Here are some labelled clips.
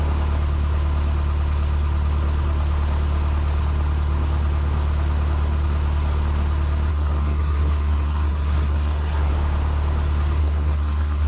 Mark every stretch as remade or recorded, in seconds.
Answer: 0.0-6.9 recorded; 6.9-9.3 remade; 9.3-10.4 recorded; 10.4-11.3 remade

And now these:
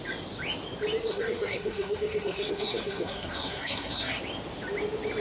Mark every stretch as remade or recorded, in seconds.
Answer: 0.0-1.1 recorded; 1.1-4.2 remade; 4.2-5.2 recorded

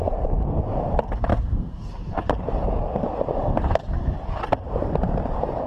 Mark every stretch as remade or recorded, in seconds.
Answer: 0.0-1.3 recorded; 1.3-1.9 remade; 1.9-5.7 recorded